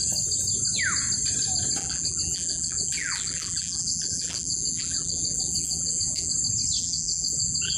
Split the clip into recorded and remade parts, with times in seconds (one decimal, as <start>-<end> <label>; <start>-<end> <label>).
0.0-1.8 recorded; 1.8-6.3 remade; 6.3-6.8 recorded; 6.8-7.8 remade